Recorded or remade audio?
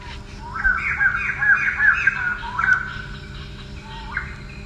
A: recorded